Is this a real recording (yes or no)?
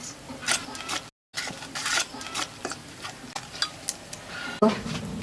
yes